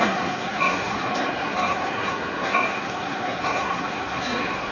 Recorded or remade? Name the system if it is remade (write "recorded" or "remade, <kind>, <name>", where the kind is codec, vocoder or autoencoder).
remade, codec, SNAC